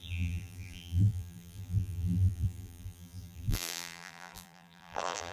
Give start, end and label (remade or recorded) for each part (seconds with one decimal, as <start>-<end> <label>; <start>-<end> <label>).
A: 0.0-5.3 remade